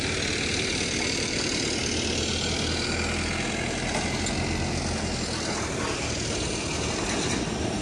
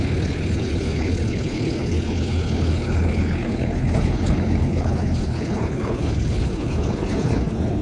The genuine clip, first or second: first